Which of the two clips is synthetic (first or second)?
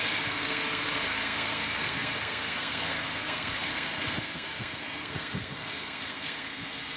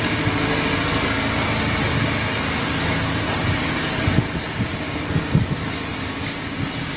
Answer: first